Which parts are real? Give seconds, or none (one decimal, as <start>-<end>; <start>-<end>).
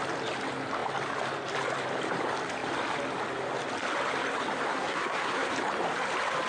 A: 0.0-4.7; 5.5-6.5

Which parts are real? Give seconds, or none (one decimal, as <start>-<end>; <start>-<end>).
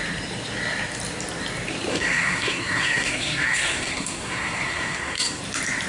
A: 0.0-1.9; 5.4-5.9